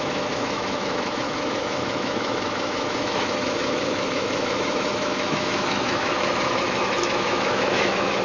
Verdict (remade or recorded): remade